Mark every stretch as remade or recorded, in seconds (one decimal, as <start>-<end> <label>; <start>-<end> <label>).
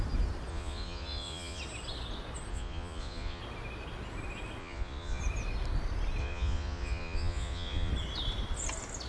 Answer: 0.0-0.5 recorded; 0.5-1.6 remade; 1.6-2.5 recorded; 2.5-3.4 remade; 3.4-4.6 recorded; 4.6-5.2 remade; 5.2-6.2 recorded; 6.2-7.9 remade; 7.9-9.1 recorded